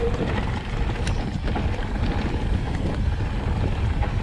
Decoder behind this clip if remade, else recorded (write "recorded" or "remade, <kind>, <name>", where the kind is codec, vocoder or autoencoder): recorded